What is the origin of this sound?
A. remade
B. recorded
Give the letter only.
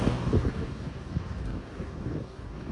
A